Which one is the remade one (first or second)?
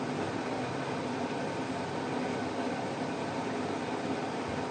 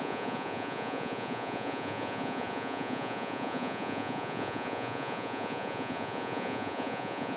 second